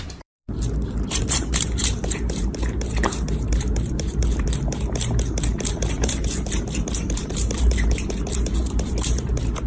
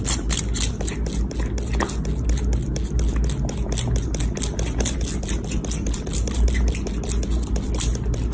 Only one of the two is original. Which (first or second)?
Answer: second